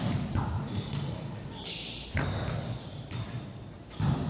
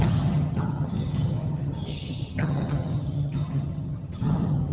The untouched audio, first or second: first